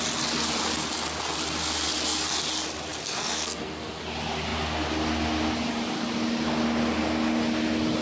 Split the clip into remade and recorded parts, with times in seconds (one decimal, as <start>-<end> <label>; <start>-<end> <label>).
0.0-3.0 recorded; 3.0-4.0 remade; 4.0-8.0 recorded